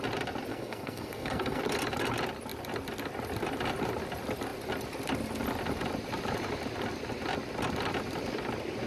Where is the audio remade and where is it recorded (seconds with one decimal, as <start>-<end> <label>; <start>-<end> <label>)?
0.0-0.5 recorded; 0.5-1.6 remade; 1.6-8.9 recorded